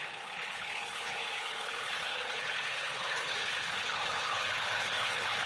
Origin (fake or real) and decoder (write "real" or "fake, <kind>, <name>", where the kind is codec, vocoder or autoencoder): fake, codec, HILCodec